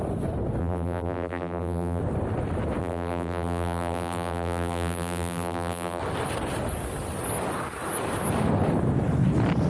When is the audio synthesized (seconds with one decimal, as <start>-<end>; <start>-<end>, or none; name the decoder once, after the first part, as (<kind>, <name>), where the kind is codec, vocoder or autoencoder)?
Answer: 0.6-2.0 (vocoder, BigVGAN v2); 2.8-6.0